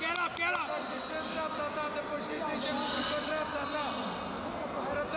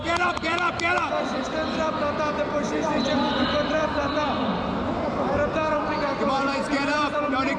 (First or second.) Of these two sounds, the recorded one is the first